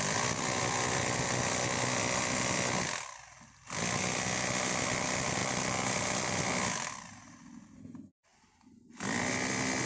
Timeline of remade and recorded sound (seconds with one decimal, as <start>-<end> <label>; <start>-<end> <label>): 0.0-5.4 recorded; 5.4-6.5 remade; 6.5-9.9 recorded

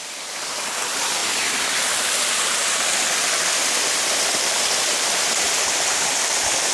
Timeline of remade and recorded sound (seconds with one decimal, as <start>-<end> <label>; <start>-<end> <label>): 0.0-1.2 remade; 1.2-4.1 recorded; 4.1-6.7 remade